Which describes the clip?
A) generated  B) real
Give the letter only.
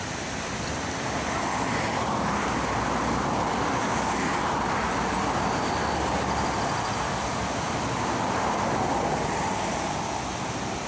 B